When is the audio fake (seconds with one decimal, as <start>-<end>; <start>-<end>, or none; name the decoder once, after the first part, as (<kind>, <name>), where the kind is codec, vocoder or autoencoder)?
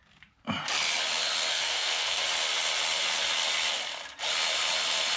1.5-2.2 (codec, SNAC)